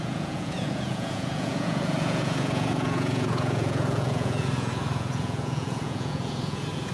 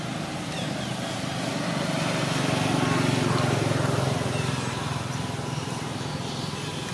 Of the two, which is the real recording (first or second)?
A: second